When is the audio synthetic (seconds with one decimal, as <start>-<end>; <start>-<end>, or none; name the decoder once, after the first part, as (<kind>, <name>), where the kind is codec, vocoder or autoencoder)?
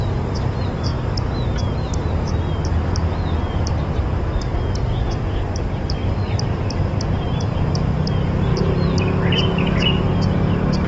6.0-8.1 (vocoder, BigVGAN v2); 8.5-9.0